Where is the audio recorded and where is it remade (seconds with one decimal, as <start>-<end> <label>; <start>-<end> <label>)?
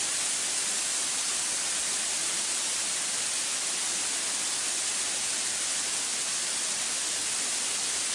0.0-8.1 recorded